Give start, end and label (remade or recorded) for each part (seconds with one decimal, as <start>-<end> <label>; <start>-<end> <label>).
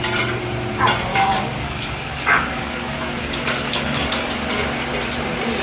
0.0-1.1 recorded; 1.1-4.5 remade; 4.5-5.6 recorded